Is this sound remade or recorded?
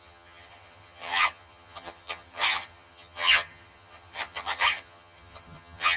remade